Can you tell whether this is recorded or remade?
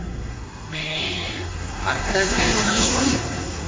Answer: remade